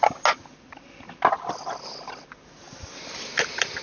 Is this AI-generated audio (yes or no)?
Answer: no